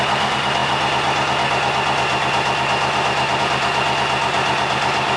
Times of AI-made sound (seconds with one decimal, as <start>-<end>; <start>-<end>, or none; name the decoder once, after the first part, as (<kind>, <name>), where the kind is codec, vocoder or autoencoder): none